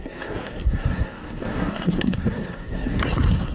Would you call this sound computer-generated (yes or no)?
yes